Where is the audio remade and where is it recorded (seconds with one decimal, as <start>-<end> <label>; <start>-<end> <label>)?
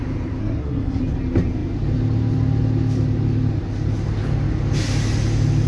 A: 0.0-0.4 recorded; 0.4-1.0 remade; 1.0-5.7 recorded